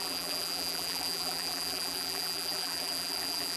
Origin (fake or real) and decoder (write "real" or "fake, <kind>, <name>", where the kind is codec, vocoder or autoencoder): fake, vocoder, BigVGAN v2